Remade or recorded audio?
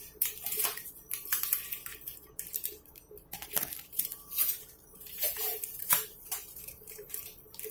remade